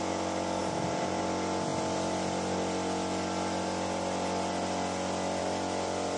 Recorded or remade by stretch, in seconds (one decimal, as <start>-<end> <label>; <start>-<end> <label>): 0.0-0.6 recorded; 0.6-1.2 remade; 1.2-6.2 recorded